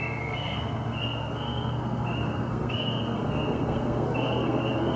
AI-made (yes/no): yes